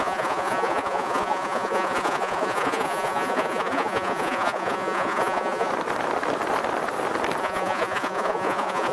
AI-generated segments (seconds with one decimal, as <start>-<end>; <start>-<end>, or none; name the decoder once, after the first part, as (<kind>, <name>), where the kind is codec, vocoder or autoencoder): 0.0-5.7 (vocoder, Vocos); 7.4-8.9